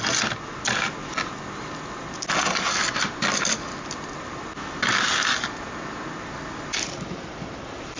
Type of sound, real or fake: real